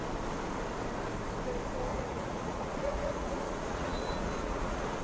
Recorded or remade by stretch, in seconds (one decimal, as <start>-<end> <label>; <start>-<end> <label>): 0.0-1.9 recorded; 1.9-5.0 remade